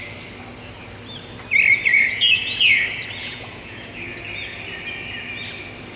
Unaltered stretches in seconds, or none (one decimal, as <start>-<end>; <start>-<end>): 0.0-1.9; 2.6-3.2; 4.1-6.0